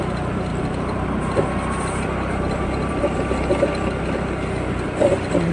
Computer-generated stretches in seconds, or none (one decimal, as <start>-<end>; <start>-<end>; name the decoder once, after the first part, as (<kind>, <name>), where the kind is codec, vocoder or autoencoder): none